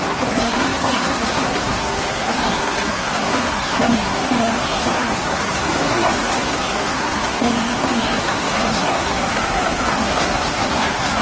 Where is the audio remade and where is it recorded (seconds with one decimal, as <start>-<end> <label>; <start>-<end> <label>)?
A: 0.0-11.2 remade